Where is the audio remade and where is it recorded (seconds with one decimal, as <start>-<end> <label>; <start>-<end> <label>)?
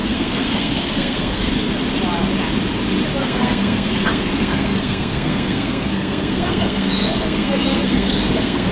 0.0-1.5 remade; 1.5-3.2 recorded; 3.2-8.7 remade